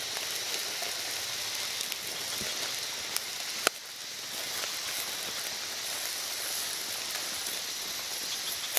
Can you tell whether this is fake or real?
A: real